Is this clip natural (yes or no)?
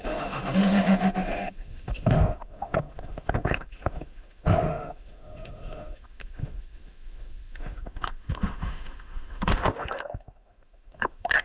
no